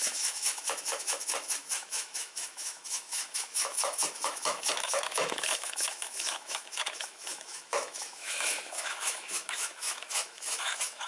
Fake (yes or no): yes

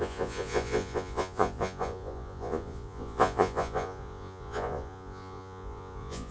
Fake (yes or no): yes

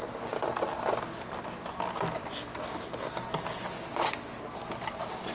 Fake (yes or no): no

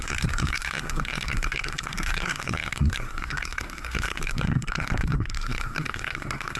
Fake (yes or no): yes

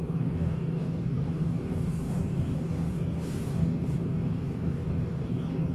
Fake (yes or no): yes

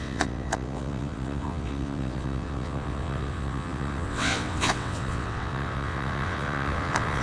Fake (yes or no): yes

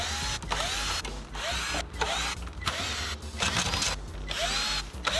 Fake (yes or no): no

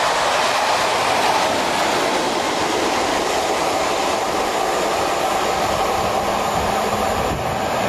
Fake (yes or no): yes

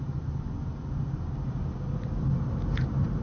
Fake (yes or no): no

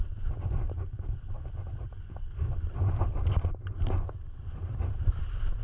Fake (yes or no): no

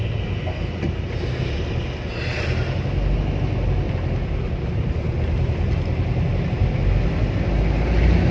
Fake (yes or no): no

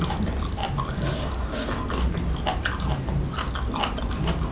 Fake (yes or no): no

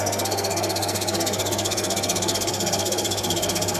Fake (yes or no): yes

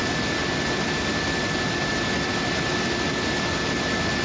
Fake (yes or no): no